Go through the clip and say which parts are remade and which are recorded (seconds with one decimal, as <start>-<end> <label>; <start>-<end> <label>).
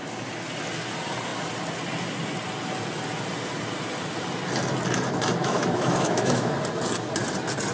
0.0-5.4 recorded; 5.4-6.5 remade; 6.5-7.7 recorded